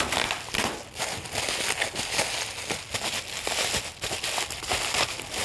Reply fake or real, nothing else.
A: real